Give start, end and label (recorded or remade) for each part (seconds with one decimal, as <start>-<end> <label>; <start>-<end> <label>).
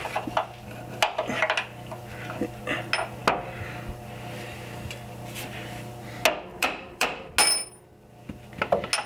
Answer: 0.0-6.6 recorded; 6.6-7.3 remade; 7.3-9.1 recorded